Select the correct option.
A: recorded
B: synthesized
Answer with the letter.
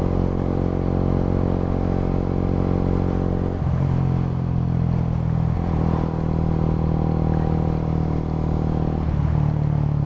A